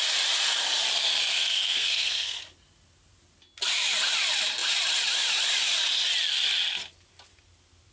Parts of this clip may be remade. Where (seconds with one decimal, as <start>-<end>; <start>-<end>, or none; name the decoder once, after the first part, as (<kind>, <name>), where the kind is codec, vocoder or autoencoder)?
1.3-2.4 (codec, SNAC)